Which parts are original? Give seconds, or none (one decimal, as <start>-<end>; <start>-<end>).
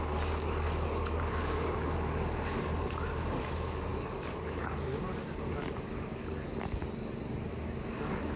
6.8-7.5